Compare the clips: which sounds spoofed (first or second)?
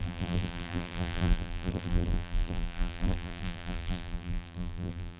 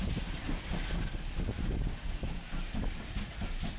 first